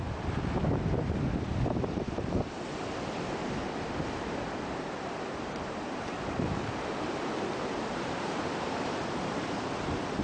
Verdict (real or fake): fake